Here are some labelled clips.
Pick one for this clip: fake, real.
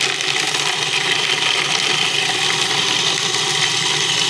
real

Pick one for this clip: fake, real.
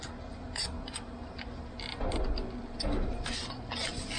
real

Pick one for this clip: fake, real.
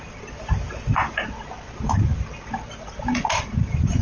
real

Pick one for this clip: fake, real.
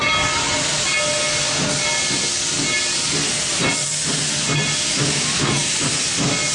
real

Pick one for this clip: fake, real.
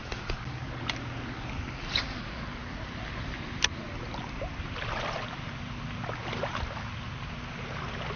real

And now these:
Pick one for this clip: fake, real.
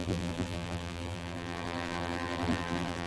fake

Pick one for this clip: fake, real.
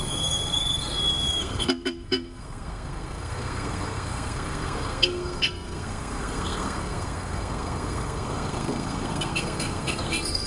fake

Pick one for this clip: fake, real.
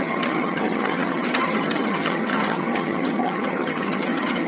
fake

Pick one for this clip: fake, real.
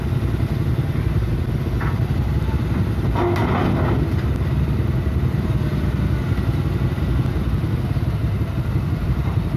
real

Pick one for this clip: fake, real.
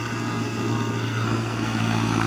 fake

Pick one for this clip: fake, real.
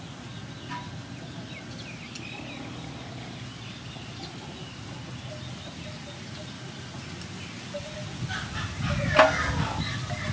real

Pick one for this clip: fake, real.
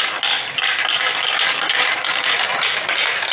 real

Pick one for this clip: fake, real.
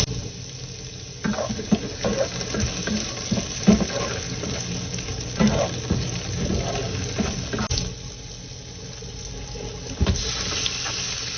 real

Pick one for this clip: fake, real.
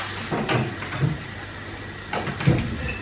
real